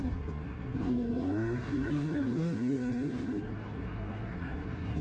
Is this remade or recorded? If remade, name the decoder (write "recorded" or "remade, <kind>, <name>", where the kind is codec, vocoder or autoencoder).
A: remade, codec, SNAC